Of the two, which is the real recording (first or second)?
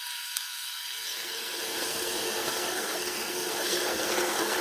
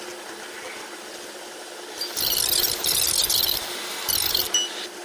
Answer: second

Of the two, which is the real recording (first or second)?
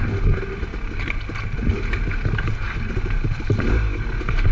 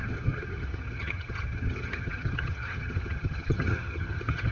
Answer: first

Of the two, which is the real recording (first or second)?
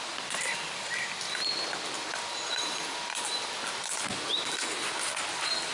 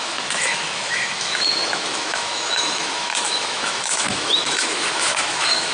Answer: first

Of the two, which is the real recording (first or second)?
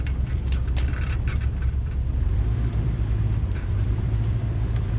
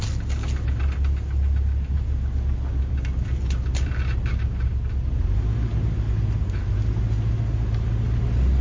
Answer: second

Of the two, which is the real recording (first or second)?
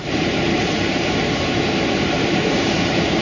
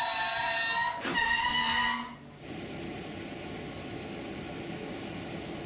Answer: second